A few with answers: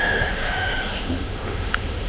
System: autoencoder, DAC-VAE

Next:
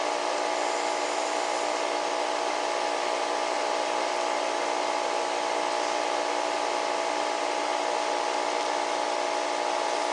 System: none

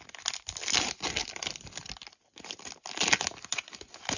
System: none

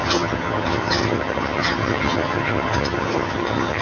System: vocoder, HiFi-GAN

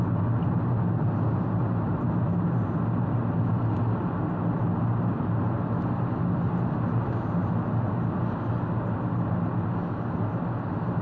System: none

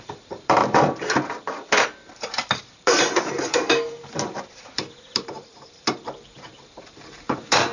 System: vocoder, BigVGAN v2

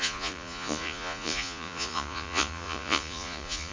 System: vocoder, Vocos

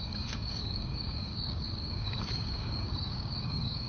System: codec, DAC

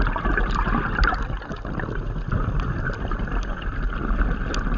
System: none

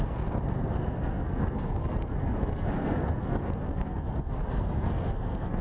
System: codec, SNAC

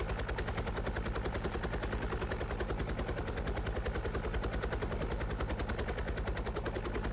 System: none